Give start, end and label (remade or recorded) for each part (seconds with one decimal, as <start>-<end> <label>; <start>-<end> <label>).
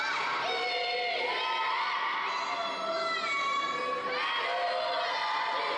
0.0-5.2 recorded; 5.2-5.8 remade